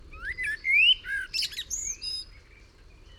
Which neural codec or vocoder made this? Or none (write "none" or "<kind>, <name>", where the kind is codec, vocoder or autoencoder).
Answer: none